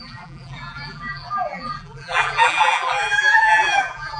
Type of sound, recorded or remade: remade